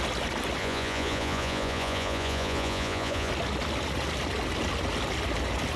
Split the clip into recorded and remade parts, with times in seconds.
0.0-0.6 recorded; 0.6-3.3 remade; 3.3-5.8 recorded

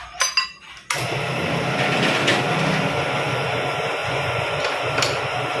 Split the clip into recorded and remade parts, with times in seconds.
0.0-4.0 recorded; 4.0-4.6 remade; 4.6-5.6 recorded

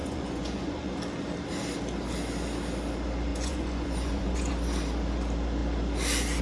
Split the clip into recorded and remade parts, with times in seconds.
0.0-1.0 remade; 1.0-3.3 recorded; 3.3-4.5 remade; 4.5-6.4 recorded

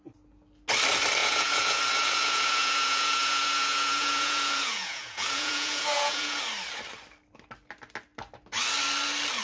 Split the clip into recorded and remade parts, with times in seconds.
0.0-1.2 recorded; 1.2-6.4 remade; 6.4-9.4 recorded

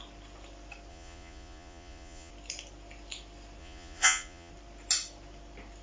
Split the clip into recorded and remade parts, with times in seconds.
0.0-0.9 recorded; 0.9-2.3 remade; 2.3-3.6 recorded; 3.6-4.5 remade; 4.5-5.8 recorded